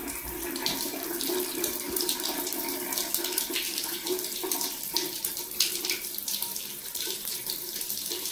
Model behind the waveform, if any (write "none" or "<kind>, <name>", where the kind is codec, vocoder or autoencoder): vocoder, BigVGAN v2